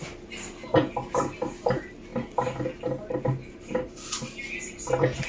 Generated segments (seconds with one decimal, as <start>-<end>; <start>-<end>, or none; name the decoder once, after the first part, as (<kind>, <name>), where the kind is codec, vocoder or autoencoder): none